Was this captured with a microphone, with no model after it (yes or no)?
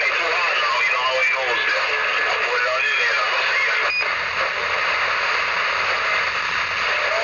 yes